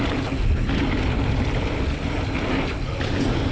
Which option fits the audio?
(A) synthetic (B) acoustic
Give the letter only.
B